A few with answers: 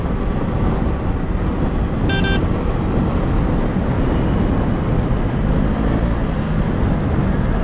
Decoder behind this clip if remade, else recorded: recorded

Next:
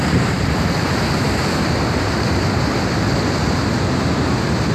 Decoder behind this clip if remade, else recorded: recorded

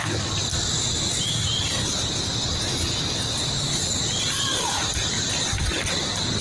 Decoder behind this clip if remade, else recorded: recorded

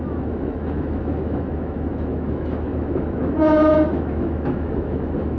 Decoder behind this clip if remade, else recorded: remade, autoencoder, DAC-VAE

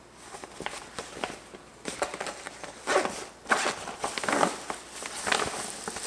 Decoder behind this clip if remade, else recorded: recorded